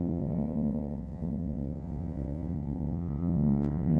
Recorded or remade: remade